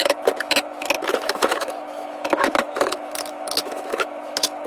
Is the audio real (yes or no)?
no